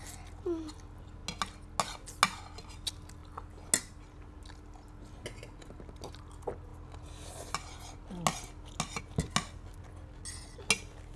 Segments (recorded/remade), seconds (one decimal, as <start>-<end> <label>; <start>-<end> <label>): 0.0-11.2 recorded